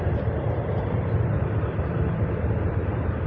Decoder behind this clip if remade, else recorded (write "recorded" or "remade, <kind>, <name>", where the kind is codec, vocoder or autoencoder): recorded